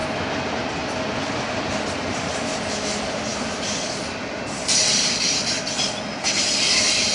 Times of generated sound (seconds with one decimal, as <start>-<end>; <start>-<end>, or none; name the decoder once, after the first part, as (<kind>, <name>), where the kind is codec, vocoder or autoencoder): none